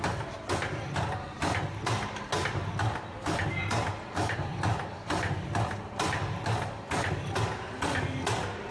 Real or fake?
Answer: real